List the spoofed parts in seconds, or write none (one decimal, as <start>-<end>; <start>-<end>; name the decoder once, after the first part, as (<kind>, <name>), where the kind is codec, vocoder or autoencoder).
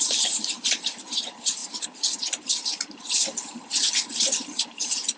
0.0-5.2 (vocoder, BigVGAN v2)